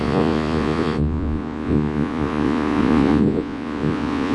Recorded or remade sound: remade